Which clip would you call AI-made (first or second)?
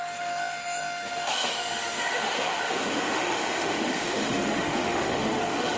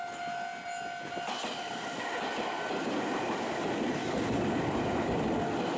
first